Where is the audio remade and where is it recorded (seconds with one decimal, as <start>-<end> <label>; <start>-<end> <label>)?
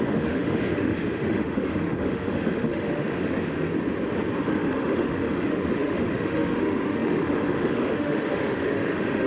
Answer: 0.0-3.7 remade; 3.7-4.4 recorded; 4.4-9.3 remade